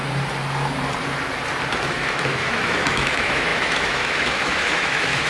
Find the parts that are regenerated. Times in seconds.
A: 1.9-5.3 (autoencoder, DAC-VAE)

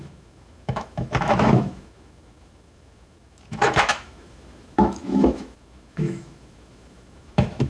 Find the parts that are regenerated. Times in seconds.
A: 0.0-7.7 (autoencoder, DAC-VAE)

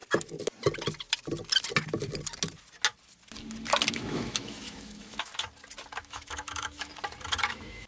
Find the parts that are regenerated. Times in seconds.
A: 3.9-5.3 (autoencoder, DAC-VAE); 6.0-6.9; 7.5-7.9

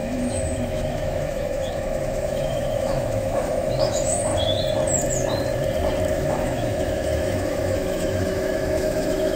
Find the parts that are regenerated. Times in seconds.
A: 0.0-4.3 (autoencoder, DAC-VAE); 6.1-9.4

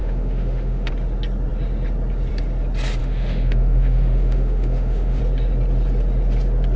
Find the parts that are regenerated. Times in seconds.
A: 0.0-0.9 (autoencoder, DAC-VAE); 3.0-5.2

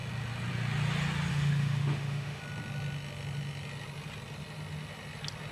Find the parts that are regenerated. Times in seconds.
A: 1.3-2.4 (autoencoder, DAC-VAE)

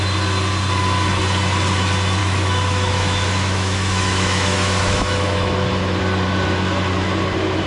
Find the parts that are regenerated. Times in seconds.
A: 2.2-5.5 (autoencoder, DAC-VAE)